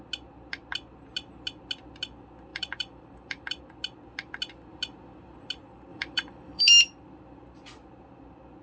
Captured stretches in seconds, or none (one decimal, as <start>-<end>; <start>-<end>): 0.0-2.5; 3.6-5.9; 6.6-8.6